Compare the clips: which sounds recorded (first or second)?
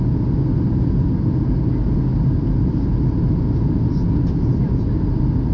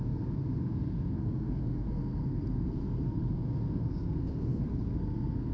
first